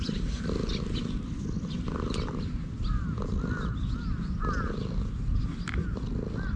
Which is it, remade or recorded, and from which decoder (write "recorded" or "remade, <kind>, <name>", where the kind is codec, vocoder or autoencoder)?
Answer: recorded